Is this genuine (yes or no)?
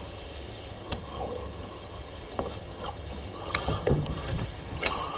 no